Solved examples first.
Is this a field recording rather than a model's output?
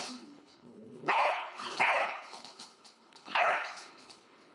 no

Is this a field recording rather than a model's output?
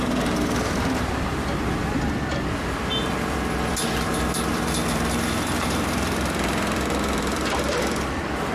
no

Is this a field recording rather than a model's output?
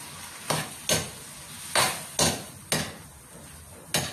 yes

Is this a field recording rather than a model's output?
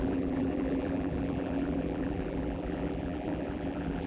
no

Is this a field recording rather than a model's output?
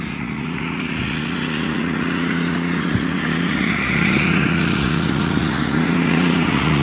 no